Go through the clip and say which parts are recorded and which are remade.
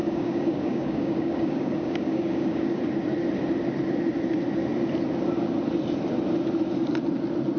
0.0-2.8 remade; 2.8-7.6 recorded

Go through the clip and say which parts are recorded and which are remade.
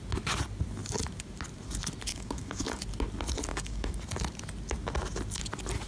0.0-2.1 recorded; 2.1-2.8 remade; 2.8-3.5 recorded; 3.5-4.0 remade; 4.0-5.9 recorded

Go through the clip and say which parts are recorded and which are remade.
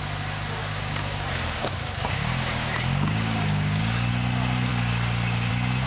0.0-0.6 recorded; 0.6-4.1 remade; 4.1-4.7 recorded; 4.7-5.5 remade; 5.5-5.9 recorded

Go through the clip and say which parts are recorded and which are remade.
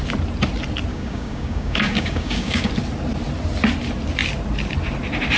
0.0-0.9 recorded; 0.9-2.7 remade; 2.7-5.4 recorded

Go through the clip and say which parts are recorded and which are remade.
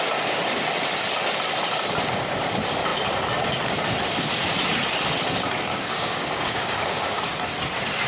0.0-5.7 recorded; 5.7-7.2 remade; 7.2-8.1 recorded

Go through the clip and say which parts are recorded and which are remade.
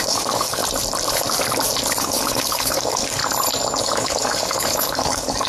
0.0-0.6 remade; 0.6-2.0 recorded; 2.0-3.2 remade; 3.2-3.8 recorded; 3.8-5.5 remade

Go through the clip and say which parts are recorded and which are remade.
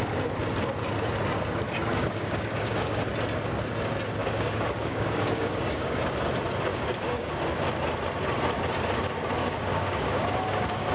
0.0-1.9 recorded; 1.9-3.0 remade; 3.0-4.2 recorded; 4.2-6.2 remade; 6.2-6.7 recorded; 6.7-7.3 remade; 7.3-9.4 recorded; 9.4-10.9 remade